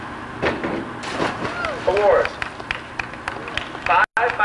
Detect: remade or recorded recorded